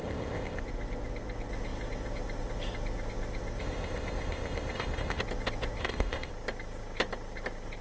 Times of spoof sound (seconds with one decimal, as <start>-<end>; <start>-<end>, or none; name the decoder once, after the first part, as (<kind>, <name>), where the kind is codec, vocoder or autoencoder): 0.0-0.6 (codec, ZipCodec); 3.6-5.2; 5.8-6.3